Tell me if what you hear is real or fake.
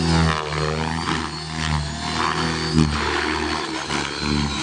real